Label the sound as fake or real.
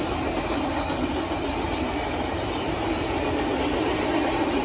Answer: real